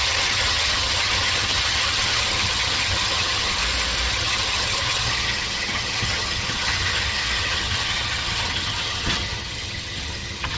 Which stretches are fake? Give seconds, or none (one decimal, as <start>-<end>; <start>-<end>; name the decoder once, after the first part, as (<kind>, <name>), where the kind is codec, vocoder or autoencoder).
0.0-3.6 (vocoder, HiFi-GAN); 4.1-10.6